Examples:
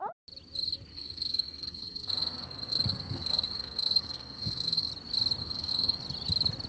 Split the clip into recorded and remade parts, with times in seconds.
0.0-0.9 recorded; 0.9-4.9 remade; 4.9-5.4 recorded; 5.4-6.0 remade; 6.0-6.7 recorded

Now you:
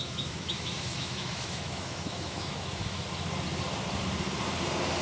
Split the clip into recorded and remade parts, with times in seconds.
0.0-3.0 remade; 3.0-5.0 recorded

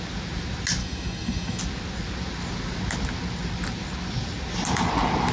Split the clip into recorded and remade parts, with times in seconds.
0.0-0.8 recorded; 0.8-1.6 remade; 1.6-5.3 recorded

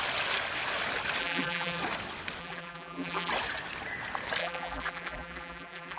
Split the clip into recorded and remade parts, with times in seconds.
0.0-1.2 recorded; 1.2-1.8 remade; 1.8-2.4 recorded; 2.4-3.3 remade; 3.3-4.4 recorded; 4.4-6.0 remade

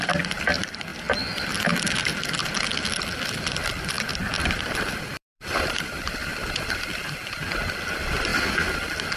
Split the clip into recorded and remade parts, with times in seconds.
0.0-5.2 recorded; 5.2-6.1 remade; 6.1-9.2 recorded

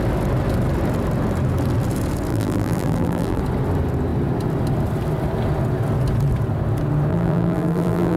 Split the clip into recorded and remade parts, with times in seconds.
0.0-2.3 recorded; 2.3-3.4 remade; 3.4-7.1 recorded; 7.1-8.2 remade

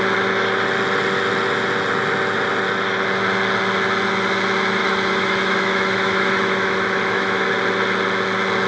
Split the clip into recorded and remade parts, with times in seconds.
0.0-4.8 recorded; 4.8-7.5 remade; 7.5-8.7 recorded